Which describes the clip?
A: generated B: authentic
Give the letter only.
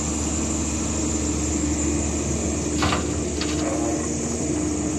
B